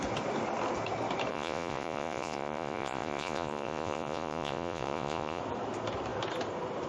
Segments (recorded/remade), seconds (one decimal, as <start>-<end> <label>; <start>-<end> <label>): 0.0-1.3 recorded; 1.3-5.4 remade; 5.4-6.9 recorded